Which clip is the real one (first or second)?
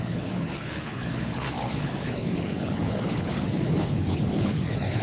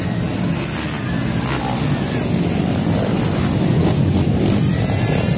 second